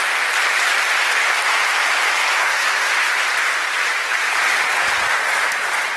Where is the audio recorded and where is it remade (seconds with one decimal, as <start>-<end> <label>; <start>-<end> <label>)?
0.0-2.4 recorded; 2.4-2.9 remade; 2.9-6.0 recorded